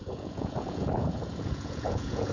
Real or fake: fake